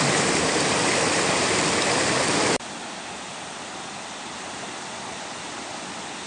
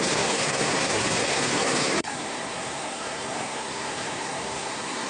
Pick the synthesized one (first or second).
second